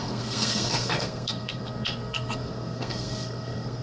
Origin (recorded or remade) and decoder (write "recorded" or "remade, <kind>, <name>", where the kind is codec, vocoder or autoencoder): remade, codec, SNAC